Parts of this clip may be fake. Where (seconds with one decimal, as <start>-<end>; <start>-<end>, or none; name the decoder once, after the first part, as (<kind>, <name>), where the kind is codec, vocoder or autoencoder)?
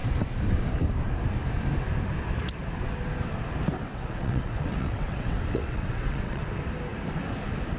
3.9-6.4 (vocoder, WaveNeXt)